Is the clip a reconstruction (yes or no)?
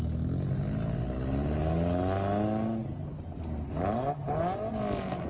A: no